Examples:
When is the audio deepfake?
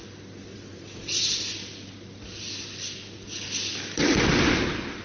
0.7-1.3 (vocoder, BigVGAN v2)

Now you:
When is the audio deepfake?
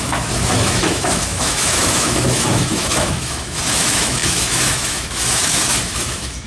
0.0-6.5 (autoencoder, DAC-VAE)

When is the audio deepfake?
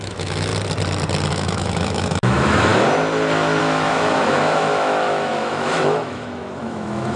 0.0-0.5 (autoencoder, DAC-VAE); 1.3-2.7; 3.6-7.2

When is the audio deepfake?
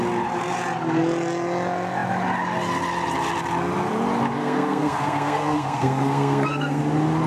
4.4-6.8 (codec, SNAC)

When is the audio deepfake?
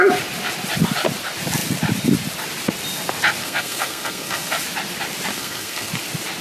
3.4-4.5 (codec, SNAC); 5.3-5.9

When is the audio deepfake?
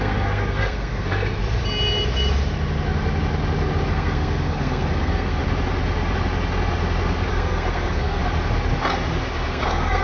0.0-1.4 (codec, SNAC); 3.9-5.4; 7.3-8.2; 9.5-10.0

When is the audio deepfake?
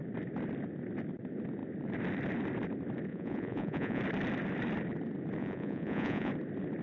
3.1-4.0 (vocoder, Vocos); 5.4-6.3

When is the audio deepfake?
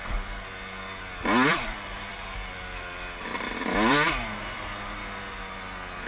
1.5-4.1 (vocoder, BigVGAN v2)